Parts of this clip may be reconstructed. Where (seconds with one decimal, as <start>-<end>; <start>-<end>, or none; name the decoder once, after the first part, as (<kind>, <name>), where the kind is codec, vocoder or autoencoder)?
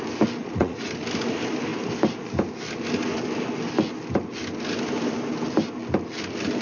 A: 0.4-0.9 (vocoder, Vocos)